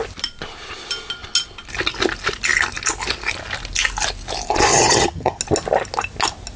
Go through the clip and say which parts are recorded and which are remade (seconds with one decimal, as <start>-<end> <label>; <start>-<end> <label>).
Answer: 0.0-4.7 recorded; 4.7-5.4 remade; 5.4-6.6 recorded